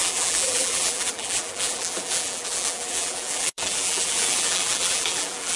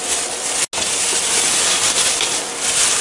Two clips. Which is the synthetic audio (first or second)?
first